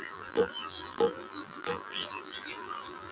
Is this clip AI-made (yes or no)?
yes